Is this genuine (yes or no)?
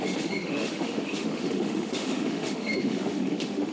no